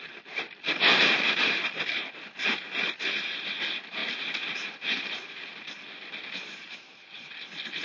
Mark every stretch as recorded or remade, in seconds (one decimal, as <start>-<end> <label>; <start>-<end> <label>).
0.0-7.8 remade